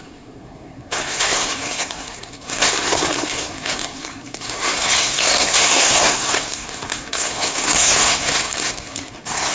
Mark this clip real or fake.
fake